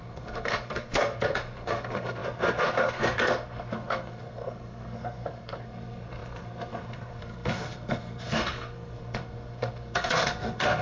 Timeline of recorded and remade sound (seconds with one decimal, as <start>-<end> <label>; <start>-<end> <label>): 0.0-10.8 remade

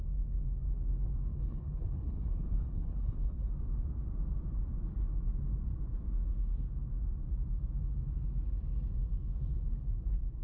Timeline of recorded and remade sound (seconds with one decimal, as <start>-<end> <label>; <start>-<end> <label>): 0.0-1.3 recorded; 1.3-3.5 remade; 3.5-10.4 recorded